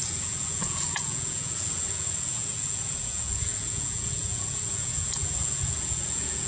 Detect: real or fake fake